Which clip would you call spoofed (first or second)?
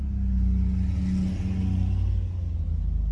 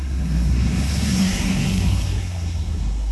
second